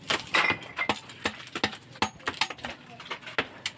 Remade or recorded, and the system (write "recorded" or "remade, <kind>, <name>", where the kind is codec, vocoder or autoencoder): recorded